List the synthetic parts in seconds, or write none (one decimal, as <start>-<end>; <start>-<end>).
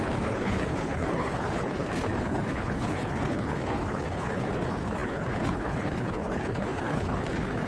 0.0-7.7